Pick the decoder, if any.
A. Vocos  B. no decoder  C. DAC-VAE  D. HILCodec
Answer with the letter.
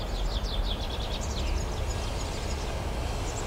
B